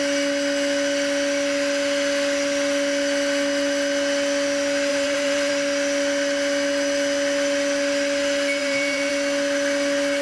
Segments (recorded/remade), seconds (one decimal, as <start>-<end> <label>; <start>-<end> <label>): 0.0-4.9 recorded; 4.9-5.5 remade; 5.5-8.6 recorded; 8.6-9.1 remade; 9.1-10.2 recorded